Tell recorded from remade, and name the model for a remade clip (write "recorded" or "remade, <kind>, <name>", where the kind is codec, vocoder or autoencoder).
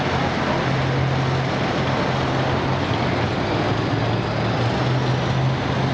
recorded